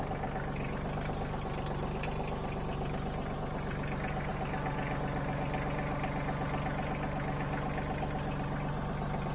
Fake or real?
real